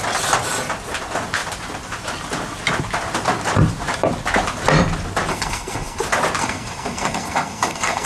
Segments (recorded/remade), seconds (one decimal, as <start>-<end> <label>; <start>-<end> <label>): 0.0-5.3 recorded; 5.3-6.0 remade; 6.0-6.4 recorded; 6.4-8.1 remade